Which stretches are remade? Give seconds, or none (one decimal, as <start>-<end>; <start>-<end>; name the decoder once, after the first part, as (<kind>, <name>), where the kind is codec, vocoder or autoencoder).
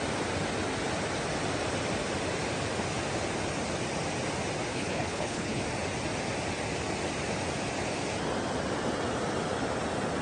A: 4.7-5.6 (codec, HILCodec)